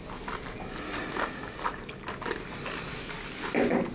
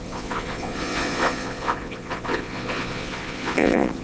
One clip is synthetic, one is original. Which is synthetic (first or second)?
second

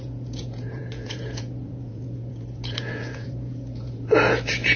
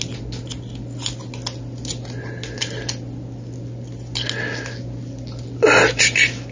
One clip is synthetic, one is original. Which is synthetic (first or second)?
first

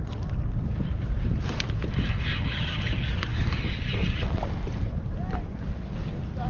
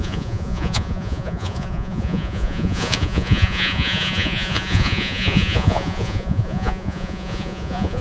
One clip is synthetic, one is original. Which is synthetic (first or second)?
second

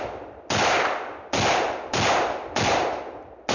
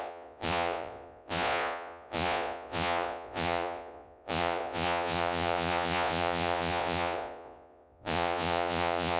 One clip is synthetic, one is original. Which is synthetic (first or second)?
second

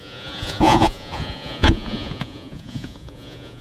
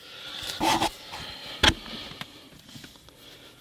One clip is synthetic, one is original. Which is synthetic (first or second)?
first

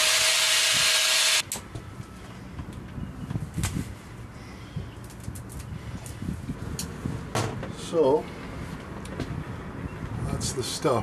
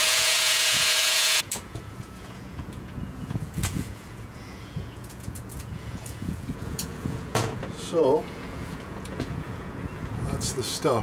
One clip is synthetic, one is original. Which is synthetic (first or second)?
second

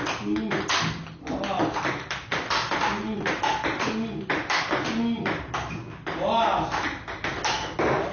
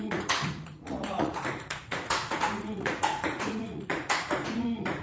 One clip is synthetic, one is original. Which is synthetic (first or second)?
second